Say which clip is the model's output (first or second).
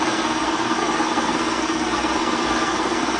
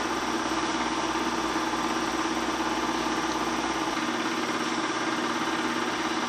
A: first